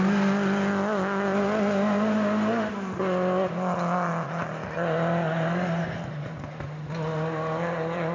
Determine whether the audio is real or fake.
real